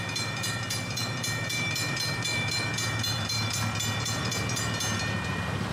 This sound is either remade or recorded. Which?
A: remade